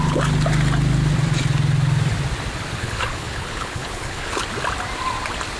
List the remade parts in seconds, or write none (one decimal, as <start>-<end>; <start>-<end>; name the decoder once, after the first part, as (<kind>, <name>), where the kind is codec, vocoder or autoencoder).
2.8-4.4 (codec, HILCodec)

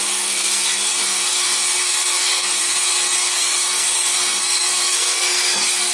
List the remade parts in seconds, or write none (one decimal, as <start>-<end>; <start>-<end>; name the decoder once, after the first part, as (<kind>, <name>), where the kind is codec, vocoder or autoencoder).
0.0-5.9 (codec, SNAC)

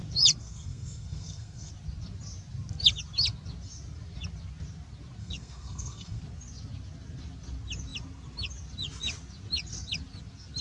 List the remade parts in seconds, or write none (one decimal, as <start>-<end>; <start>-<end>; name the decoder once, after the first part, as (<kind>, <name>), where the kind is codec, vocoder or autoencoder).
0.4-1.7 (codec, SNAC); 5.2-6.2

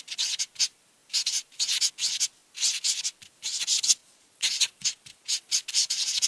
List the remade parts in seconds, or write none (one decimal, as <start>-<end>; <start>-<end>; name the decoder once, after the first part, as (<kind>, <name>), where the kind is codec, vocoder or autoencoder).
4.0-5.5 (vocoder, Vocos)

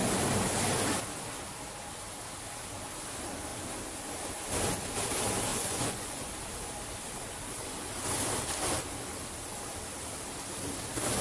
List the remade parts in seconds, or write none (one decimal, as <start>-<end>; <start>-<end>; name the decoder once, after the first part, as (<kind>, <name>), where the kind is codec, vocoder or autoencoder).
5.5-6.3 (vocoder, Vocos)

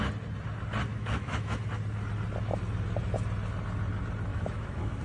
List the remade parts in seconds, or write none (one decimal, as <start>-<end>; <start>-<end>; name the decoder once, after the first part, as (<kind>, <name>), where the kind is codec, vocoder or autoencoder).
0.9-1.6 (autoencoder, DAC-VAE); 4.3-5.0

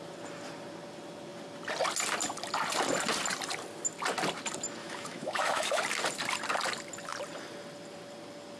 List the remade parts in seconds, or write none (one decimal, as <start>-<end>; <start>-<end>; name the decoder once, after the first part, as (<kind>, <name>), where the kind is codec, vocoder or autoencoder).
4.8-5.8 (autoencoder, DAC-VAE)

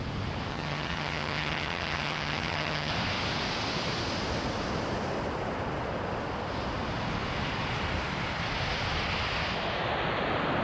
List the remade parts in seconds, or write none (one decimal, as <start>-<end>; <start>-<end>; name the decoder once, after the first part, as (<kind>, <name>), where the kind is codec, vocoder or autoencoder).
0.5-2.9 (vocoder, HiFi-GAN)